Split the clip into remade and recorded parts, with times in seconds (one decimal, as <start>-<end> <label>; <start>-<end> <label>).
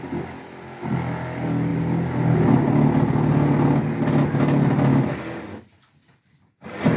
0.0-7.0 recorded